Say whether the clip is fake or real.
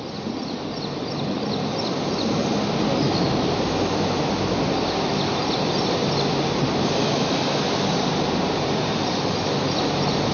real